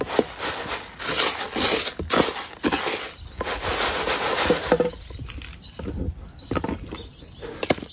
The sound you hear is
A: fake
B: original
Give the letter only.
B